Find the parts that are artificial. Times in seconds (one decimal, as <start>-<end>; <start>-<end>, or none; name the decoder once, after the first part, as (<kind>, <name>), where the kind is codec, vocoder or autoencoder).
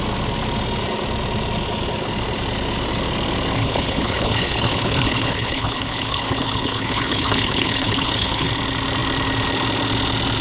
3.6-8.5 (codec, HILCodec)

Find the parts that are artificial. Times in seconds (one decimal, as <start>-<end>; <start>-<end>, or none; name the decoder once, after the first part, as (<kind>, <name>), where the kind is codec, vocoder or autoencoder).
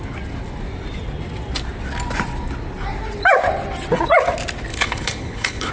4.7-5.7 (codec, HILCodec)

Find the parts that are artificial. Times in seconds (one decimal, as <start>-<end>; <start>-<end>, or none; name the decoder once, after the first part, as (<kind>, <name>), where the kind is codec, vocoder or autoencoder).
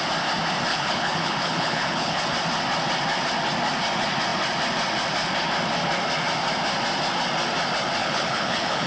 0.7-2.2 (codec, HILCodec); 8.0-8.9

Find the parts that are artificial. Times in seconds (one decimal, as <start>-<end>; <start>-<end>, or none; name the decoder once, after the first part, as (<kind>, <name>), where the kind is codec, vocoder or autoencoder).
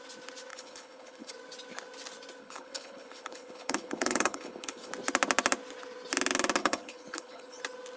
0.5-1.3 (codec, HILCodec); 2.4-4.9; 6.6-7.6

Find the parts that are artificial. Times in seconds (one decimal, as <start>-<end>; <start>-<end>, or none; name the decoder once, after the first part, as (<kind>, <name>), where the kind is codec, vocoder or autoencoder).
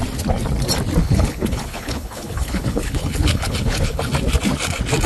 1.0-4.1 (codec, HILCodec)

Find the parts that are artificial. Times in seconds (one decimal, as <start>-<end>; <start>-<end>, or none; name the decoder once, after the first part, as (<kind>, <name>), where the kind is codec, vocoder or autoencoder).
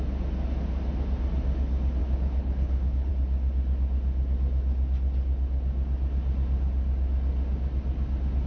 2.0-3.1 (codec, HILCodec)